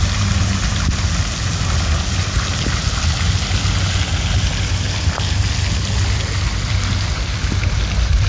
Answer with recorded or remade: recorded